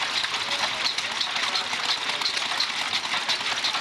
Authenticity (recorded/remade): recorded